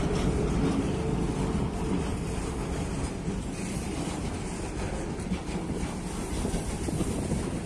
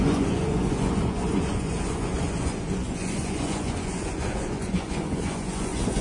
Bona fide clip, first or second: first